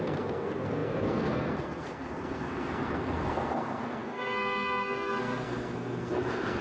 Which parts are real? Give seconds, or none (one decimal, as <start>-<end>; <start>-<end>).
none